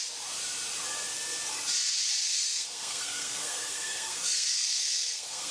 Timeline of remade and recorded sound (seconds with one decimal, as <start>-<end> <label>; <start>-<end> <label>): 0.0-2.2 recorded; 2.2-5.5 remade